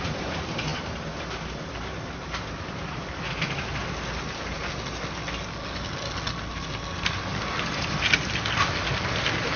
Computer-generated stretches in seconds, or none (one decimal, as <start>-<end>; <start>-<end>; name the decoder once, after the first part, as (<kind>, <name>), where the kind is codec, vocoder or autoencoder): 0.0-0.7 (vocoder, BigVGAN v2); 2.3-3.8; 6.5-7.3; 8.6-9.6